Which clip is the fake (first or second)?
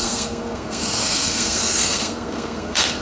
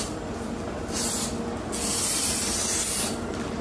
first